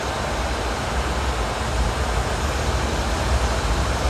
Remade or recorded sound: recorded